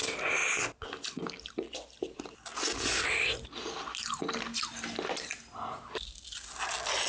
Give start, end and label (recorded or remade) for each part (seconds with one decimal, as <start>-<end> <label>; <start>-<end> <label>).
0.0-7.1 recorded